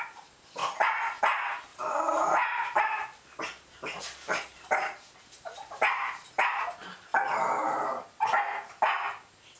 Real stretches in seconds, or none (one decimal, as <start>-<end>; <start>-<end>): 0.0-1.7; 6.6-9.6